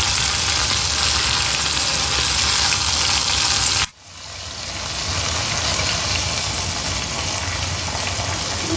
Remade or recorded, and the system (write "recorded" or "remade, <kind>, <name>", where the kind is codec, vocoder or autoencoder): recorded